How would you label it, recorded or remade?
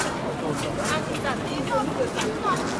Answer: recorded